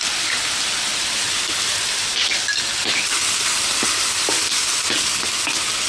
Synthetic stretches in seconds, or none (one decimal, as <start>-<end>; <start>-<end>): none